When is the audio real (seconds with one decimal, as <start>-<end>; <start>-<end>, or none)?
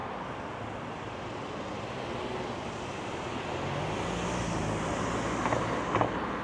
0.0-6.4